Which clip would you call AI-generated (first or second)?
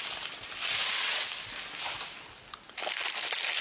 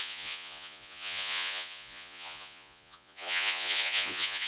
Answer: second